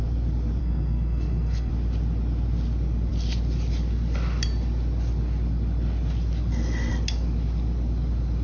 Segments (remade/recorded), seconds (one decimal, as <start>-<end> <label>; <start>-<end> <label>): 0.0-0.6 recorded; 0.6-1.7 remade; 1.7-8.4 recorded